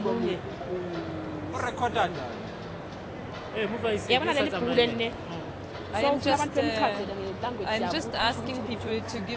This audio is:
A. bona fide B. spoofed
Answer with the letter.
A